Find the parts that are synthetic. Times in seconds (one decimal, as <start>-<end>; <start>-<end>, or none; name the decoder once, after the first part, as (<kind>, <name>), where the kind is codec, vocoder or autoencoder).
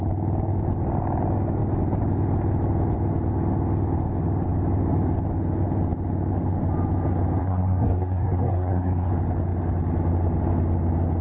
7.4-9.1 (codec, SNAC)